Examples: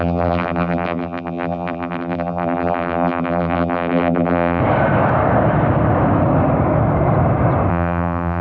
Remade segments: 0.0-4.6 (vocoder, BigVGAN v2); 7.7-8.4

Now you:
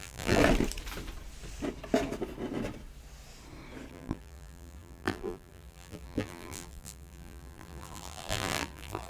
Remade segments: 0.0-0.4 (vocoder, BigVGAN v2); 3.9-9.1

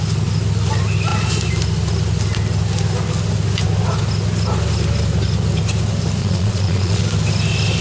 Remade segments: 6.2-7.0 (vocoder, Vocos)

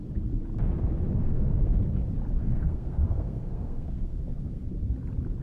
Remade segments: 1.2-1.8 (codec, SNAC); 2.4-4.7

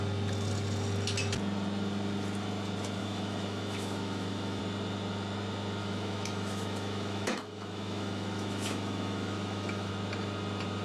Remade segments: 3.0-4.6 (autoencoder, DAC-VAE); 5.8-9.9

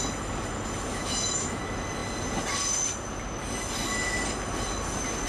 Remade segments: 0.9-1.6 (autoencoder, DAC-VAE)

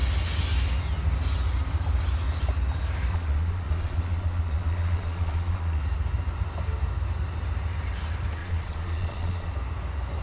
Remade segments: 3.1-5.8 (vocoder, Vocos); 8.4-9.5